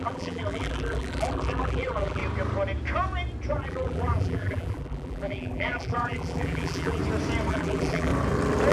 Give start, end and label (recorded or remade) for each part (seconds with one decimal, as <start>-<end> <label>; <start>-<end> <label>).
0.0-2.2 remade; 2.2-3.5 recorded; 3.5-7.0 remade; 7.0-7.5 recorded; 7.5-8.1 remade; 8.1-8.7 recorded